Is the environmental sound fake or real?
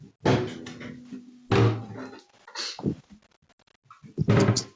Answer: real